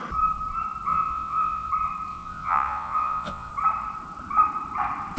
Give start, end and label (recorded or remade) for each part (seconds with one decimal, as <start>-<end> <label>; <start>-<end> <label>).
0.0-0.9 recorded; 0.9-1.7 remade; 1.7-2.1 recorded; 2.1-3.5 remade; 3.5-5.2 recorded